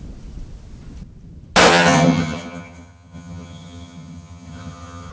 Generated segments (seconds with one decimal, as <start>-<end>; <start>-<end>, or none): 1.7-5.1